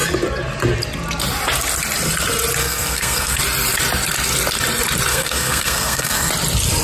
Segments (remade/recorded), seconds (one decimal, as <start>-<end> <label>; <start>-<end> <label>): 0.0-2.6 recorded; 2.6-3.4 remade; 3.4-5.1 recorded; 5.1-6.3 remade; 6.3-6.8 recorded